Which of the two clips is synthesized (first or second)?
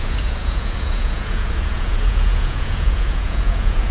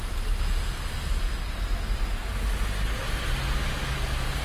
first